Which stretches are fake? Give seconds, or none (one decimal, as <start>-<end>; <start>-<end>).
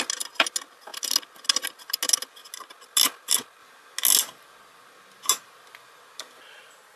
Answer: none